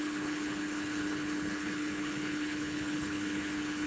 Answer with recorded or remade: remade